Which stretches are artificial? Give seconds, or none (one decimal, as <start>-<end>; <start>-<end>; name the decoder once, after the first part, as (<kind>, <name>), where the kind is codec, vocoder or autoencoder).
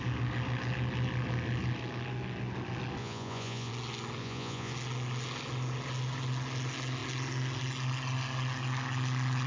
3.0-3.7 (vocoder, Vocos); 4.2-4.7